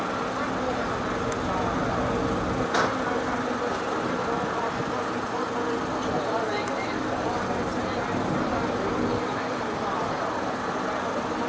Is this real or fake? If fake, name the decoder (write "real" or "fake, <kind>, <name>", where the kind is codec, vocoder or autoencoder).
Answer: real